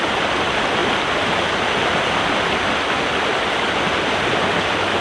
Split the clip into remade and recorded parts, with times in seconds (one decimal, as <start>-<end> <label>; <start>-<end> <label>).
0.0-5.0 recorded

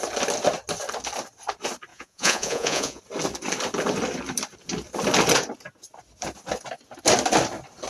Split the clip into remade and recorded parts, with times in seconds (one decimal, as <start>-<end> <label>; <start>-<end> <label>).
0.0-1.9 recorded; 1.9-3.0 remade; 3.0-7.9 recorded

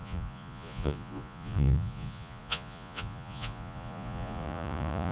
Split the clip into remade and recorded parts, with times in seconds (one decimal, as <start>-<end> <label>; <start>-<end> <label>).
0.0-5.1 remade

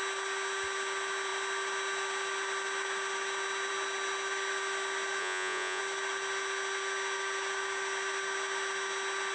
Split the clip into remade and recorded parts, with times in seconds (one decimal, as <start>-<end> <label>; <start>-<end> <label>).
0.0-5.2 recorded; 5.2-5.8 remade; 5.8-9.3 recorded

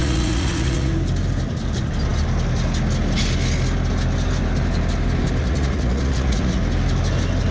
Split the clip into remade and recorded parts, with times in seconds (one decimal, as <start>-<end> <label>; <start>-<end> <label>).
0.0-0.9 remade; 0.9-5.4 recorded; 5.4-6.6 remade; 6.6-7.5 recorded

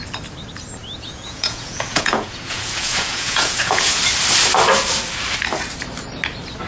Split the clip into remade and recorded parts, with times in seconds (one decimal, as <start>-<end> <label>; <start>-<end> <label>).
0.0-0.8 recorded; 0.8-4.0 remade; 4.0-6.7 recorded

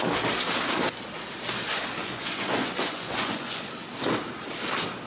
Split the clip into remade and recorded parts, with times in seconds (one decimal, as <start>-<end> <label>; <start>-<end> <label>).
0.0-2.0 recorded; 2.0-3.7 remade; 3.7-5.1 recorded